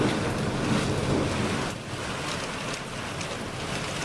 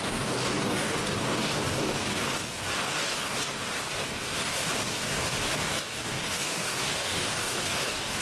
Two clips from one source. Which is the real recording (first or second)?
first